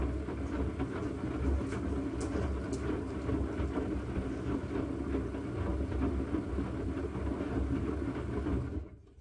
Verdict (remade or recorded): recorded